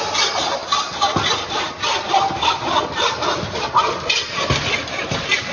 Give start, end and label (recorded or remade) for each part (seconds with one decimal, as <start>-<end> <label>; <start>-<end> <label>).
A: 0.0-5.5 recorded